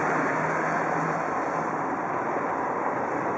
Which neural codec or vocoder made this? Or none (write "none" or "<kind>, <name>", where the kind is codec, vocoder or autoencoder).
vocoder, BigVGAN v2